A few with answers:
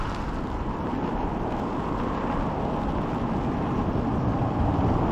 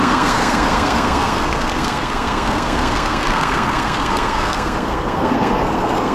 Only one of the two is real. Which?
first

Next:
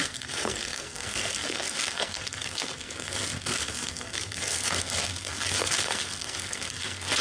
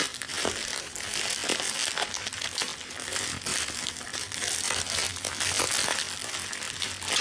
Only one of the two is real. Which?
second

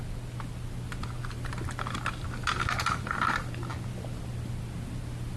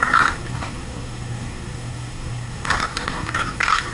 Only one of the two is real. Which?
first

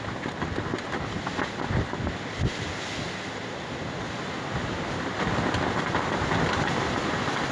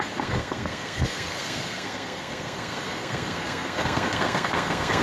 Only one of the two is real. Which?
first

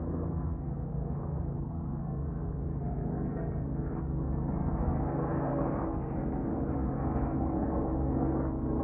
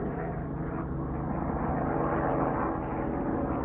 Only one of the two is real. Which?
second